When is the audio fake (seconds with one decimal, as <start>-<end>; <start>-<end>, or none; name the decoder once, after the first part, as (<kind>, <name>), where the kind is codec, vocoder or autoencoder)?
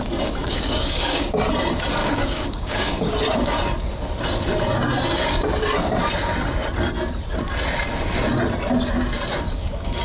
0.4-1.3 (codec, DAC); 2.0-3.1; 9.3-10.0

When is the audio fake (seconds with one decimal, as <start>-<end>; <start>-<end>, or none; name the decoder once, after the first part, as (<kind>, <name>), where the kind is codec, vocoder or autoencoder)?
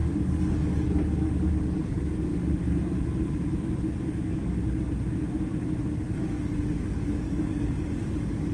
0.0-2.3 (codec, DAC); 4.0-4.6; 7.1-8.5